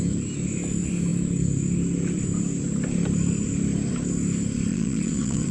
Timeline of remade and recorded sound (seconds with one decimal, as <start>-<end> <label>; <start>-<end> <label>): 0.0-4.7 recorded; 4.7-5.5 remade